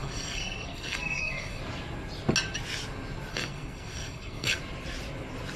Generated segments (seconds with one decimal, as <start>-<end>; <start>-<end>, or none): 0.0-1.6; 3.3-4.6